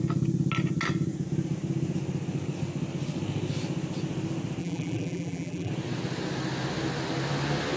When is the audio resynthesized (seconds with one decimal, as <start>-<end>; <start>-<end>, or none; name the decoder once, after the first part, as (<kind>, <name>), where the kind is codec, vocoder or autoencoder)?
4.6-5.7 (vocoder, BigVGAN v2)